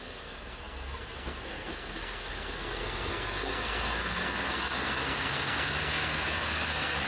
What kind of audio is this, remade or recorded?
remade